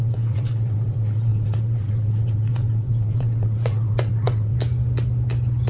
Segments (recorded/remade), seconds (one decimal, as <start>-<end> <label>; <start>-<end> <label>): 0.0-4.5 remade; 4.5-5.7 recorded